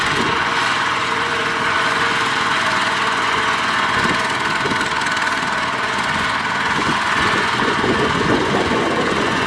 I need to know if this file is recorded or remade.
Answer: remade